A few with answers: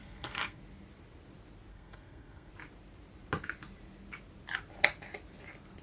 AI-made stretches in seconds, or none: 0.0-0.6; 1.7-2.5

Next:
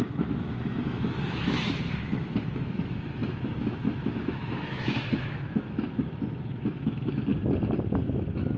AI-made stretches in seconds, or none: 0.0-7.3; 8.0-8.6

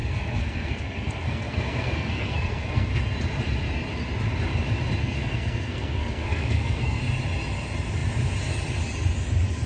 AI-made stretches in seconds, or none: 0.0-3.0; 5.0-7.0